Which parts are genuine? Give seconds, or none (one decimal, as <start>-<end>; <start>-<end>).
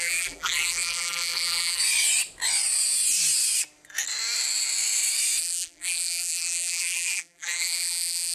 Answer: 1.8-5.4